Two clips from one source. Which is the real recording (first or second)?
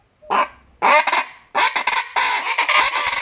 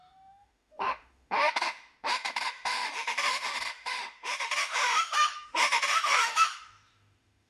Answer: first